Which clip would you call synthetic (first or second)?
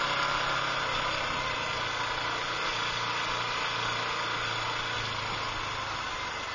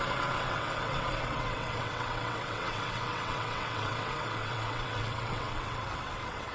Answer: second